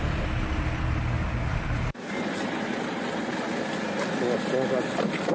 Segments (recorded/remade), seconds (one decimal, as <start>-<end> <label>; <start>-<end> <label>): 0.0-1.5 recorded; 1.5-2.2 remade; 2.2-5.3 recorded